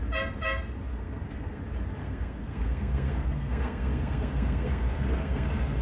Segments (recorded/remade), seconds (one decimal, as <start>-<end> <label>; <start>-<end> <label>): 0.0-0.9 recorded; 0.9-1.6 remade; 1.6-2.0 recorded; 2.0-5.8 remade